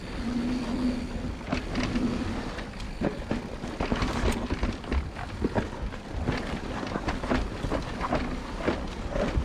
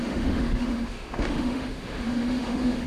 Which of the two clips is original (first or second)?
first